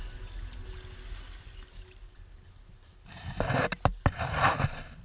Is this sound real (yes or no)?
yes